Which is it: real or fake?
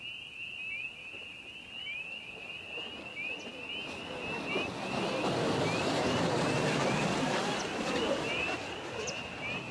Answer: real